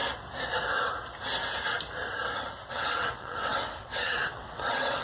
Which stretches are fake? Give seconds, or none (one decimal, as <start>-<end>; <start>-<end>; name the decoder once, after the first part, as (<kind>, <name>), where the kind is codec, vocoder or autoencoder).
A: 2.7-5.0 (vocoder, WaveNeXt)